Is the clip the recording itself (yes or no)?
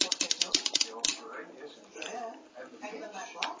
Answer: yes